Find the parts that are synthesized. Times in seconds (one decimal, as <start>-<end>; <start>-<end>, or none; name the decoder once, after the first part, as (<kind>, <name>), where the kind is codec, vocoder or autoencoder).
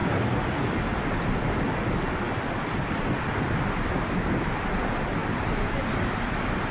5.2-5.8 (vocoder, BigVGAN v2)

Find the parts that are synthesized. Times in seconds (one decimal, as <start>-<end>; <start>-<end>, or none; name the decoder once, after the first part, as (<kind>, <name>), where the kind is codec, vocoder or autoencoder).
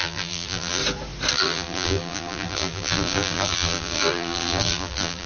0.0-0.8 (vocoder, BigVGAN v2); 1.3-5.3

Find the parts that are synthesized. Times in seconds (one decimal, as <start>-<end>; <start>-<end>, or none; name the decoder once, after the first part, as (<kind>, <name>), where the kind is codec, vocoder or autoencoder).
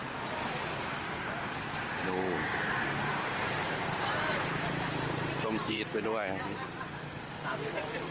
0.5-5.9 (vocoder, BigVGAN v2); 7.2-8.1